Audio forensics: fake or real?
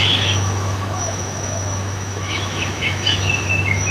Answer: fake